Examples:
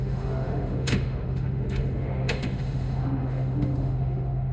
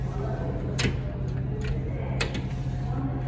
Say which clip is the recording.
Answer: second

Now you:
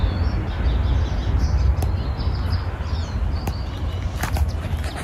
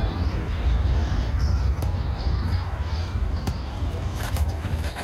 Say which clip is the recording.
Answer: first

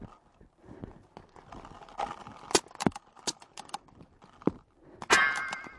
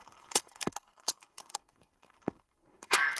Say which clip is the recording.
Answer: first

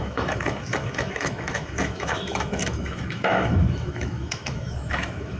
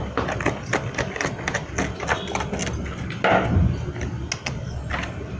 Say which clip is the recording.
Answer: second